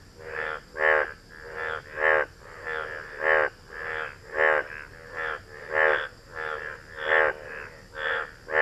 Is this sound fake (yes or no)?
no